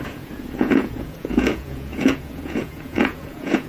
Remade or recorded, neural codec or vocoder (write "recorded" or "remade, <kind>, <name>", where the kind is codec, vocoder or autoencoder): remade, vocoder, Vocos